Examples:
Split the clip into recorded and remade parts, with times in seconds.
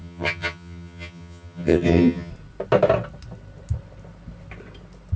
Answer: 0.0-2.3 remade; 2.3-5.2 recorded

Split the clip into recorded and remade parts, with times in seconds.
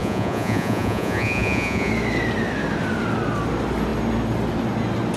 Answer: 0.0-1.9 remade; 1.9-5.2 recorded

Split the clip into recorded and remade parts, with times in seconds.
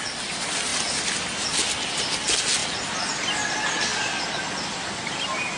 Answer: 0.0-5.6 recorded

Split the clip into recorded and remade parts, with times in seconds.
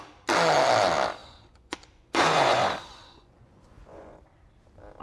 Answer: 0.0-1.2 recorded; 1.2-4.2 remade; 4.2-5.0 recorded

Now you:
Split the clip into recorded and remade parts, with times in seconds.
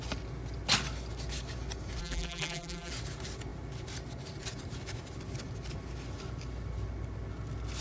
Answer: 0.0-2.0 recorded; 2.0-2.9 remade; 2.9-7.8 recorded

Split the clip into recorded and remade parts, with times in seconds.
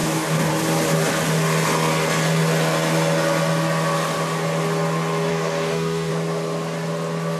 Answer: 0.0-0.5 remade; 0.5-5.3 recorded; 5.3-6.1 remade; 6.1-7.4 recorded